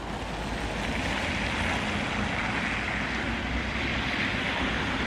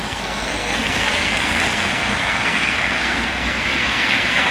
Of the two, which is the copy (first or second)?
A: second